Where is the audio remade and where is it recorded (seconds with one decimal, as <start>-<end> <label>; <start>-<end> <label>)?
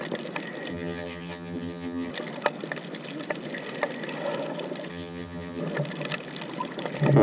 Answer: 0.0-0.7 recorded; 0.7-2.1 remade; 2.1-4.9 recorded; 4.9-5.6 remade; 5.6-7.2 recorded